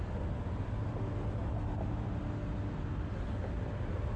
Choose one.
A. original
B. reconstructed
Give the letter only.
A